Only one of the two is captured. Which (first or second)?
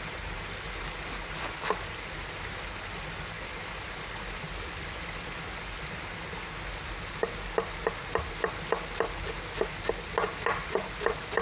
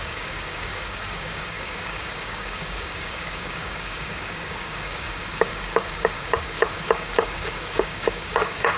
first